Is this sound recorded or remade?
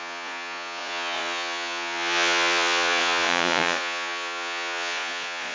remade